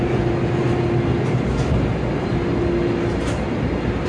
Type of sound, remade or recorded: recorded